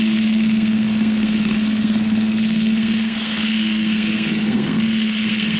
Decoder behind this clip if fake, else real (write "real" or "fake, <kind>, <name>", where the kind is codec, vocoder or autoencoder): fake, codec, SNAC